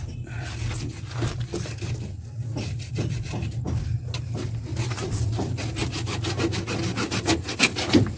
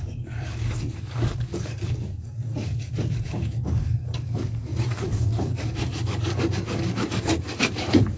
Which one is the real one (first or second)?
first